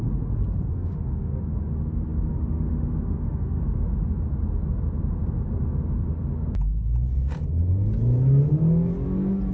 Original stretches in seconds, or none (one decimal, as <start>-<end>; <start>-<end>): 0.0-0.7; 1.4-2.3; 3.6-9.5